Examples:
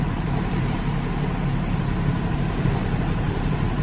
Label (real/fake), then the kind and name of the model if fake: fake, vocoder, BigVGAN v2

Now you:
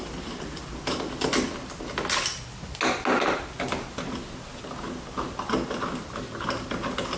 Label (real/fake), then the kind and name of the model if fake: real